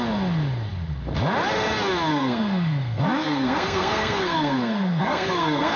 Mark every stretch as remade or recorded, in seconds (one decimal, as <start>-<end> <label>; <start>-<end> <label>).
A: 0.0-2.1 recorded; 2.1-5.8 remade